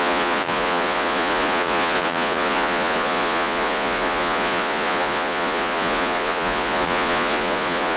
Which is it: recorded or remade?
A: remade